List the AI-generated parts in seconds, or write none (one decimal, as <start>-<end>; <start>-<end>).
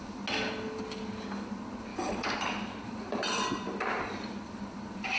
1.9-5.2